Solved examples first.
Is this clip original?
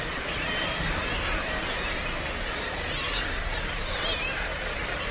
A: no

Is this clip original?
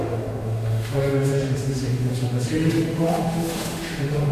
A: no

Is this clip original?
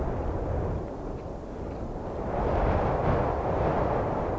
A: yes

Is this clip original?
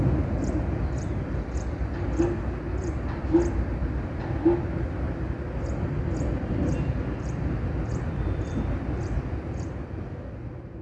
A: yes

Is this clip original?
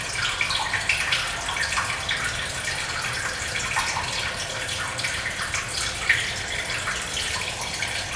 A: yes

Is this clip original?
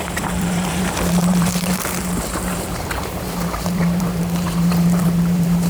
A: no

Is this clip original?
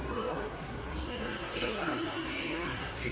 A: no